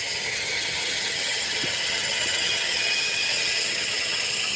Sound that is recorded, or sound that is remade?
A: remade